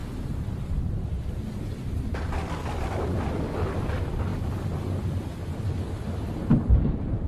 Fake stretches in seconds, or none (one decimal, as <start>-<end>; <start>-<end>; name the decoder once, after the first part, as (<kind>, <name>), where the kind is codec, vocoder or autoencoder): none